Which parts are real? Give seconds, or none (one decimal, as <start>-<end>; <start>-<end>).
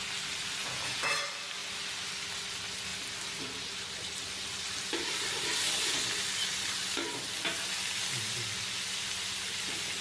0.0-0.6; 1.1-10.0